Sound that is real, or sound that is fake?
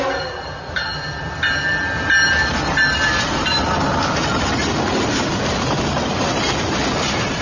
real